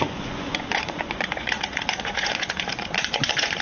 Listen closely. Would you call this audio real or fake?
fake